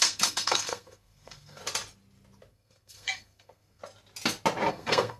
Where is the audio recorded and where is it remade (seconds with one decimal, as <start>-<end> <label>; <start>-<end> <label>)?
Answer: 0.0-1.6 remade; 1.6-2.5 recorded; 2.5-3.8 remade; 3.8-4.7 recorded; 4.7-5.2 remade